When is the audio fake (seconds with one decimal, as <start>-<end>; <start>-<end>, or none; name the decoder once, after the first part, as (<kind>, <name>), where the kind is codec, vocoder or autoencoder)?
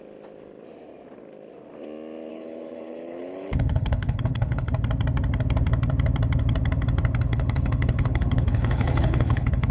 2.3-4.7 (codec, HILCodec); 7.3-9.7